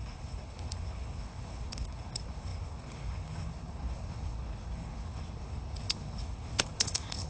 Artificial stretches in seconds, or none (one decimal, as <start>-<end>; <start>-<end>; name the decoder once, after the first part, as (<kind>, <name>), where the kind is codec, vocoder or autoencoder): 0.0-7.3 (codec, HILCodec)